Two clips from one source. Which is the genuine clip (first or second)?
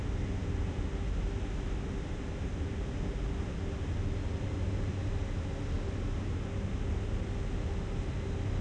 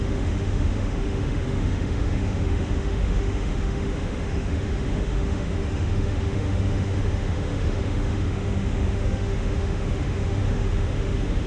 first